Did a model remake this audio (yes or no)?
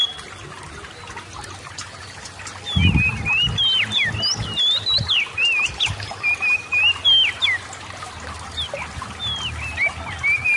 no